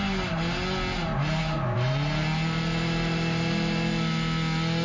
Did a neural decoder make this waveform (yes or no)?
no